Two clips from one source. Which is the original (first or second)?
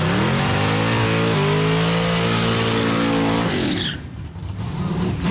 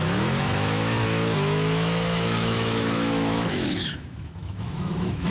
first